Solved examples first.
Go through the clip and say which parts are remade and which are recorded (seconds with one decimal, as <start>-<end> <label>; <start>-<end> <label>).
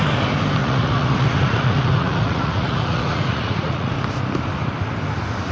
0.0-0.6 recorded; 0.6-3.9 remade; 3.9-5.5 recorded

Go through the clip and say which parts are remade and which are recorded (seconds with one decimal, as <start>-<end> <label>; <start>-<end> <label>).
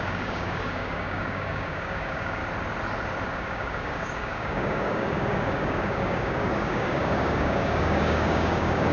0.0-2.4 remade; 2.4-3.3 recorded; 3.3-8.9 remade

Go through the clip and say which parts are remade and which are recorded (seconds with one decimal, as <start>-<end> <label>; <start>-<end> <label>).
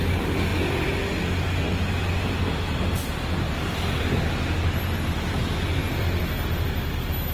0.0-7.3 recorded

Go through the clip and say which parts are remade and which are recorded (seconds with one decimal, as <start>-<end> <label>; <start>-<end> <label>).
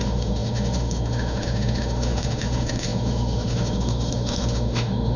0.0-5.2 remade